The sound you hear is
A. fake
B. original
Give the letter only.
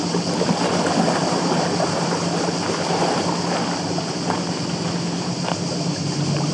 B